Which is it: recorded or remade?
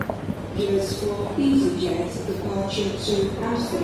recorded